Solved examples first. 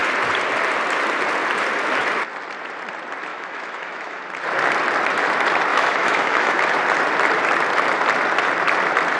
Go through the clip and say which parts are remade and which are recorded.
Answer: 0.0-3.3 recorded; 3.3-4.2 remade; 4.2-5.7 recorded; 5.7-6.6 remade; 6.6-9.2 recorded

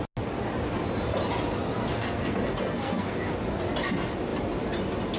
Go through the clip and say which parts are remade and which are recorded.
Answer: 0.0-1.8 recorded; 1.8-3.3 remade; 3.3-5.2 recorded

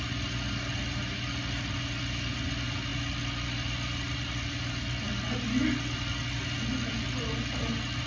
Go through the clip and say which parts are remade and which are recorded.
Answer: 0.0-8.1 recorded

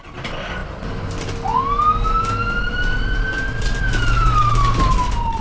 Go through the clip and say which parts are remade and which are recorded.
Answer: 0.0-5.4 recorded

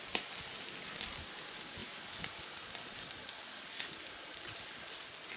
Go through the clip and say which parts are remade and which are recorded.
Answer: 0.0-5.4 recorded

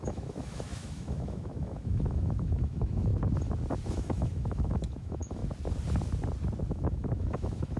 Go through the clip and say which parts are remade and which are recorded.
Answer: 0.0-3.1 remade; 3.1-3.9 recorded; 3.9-5.4 remade; 5.4-6.7 recorded; 6.7-7.8 remade

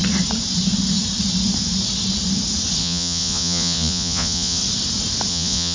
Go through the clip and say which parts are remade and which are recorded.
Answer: 0.0-2.8 recorded; 2.8-4.6 remade; 4.6-5.3 recorded; 5.3-5.7 remade

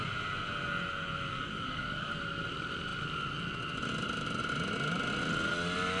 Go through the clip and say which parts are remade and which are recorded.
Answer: 0.0-1.3 recorded; 1.3-2.1 remade; 2.1-6.0 recorded